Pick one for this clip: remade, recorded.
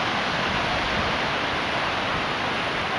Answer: recorded